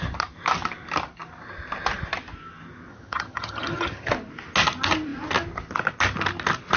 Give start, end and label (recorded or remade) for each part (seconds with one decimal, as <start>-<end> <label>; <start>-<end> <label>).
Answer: 0.0-2.9 recorded; 2.9-4.1 remade; 4.1-6.8 recorded